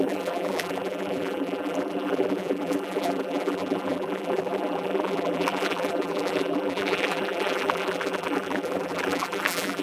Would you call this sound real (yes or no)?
no